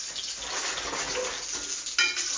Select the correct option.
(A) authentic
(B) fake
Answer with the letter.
A